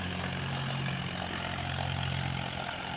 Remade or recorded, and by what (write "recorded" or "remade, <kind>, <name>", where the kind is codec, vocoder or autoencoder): recorded